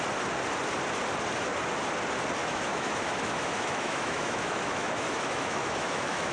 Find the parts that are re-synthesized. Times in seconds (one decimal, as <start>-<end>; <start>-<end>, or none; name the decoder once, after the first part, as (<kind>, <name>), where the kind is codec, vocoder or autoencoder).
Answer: 2.4-6.3 (autoencoder, DAC-VAE)